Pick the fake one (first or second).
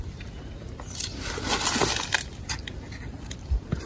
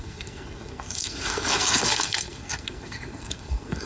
second